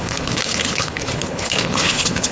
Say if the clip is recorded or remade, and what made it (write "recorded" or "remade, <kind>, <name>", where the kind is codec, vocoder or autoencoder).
remade, codec, HILCodec